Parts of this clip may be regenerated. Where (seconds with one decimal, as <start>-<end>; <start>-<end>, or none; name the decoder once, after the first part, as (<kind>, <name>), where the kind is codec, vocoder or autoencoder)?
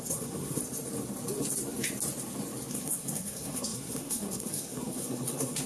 0.0-0.6 (codec, SNAC); 2.7-5.7